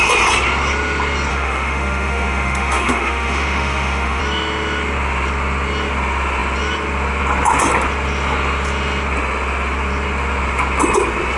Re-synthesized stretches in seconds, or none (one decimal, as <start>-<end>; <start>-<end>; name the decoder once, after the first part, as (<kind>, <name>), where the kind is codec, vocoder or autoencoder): 1.3-4.2 (autoencoder, DAC-VAE)